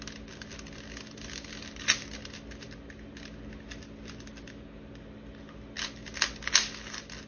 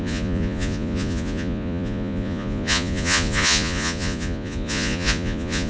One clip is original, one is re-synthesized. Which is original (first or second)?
first